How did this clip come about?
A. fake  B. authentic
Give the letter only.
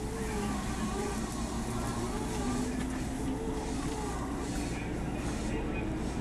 B